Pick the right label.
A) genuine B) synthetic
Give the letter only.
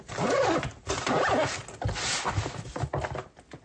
A